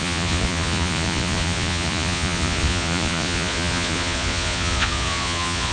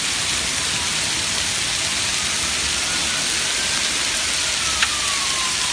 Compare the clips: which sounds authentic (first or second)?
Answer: second